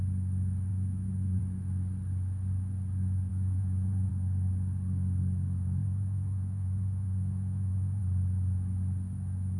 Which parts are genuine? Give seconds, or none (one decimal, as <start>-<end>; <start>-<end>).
0.0-0.7; 1.4-3.3; 4.1-5.8; 8.0-9.6

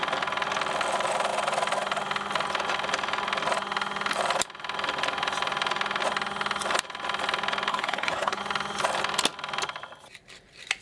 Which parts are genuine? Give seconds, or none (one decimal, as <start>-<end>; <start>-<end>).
0.0-7.7; 8.4-10.8